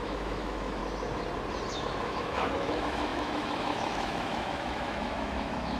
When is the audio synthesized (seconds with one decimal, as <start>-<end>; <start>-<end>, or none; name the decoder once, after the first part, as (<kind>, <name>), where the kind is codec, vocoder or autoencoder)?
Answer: 0.0-0.8 (autoencoder, DAC-VAE); 1.7-5.8